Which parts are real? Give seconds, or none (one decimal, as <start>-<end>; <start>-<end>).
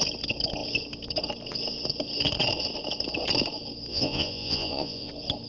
0.0-3.9; 5.1-5.5